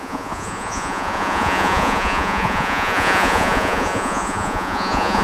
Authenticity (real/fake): fake